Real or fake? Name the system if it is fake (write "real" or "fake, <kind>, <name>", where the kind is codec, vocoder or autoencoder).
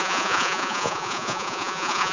fake, vocoder, Vocos